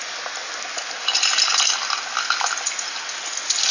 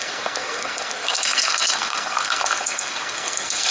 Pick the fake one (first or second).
second